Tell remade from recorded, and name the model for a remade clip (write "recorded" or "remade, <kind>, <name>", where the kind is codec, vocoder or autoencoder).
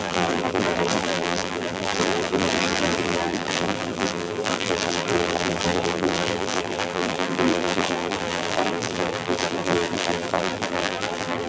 remade, vocoder, BigVGAN v2